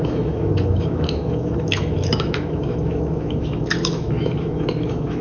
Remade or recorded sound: remade